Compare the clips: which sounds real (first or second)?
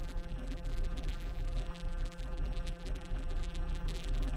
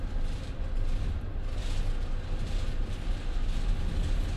second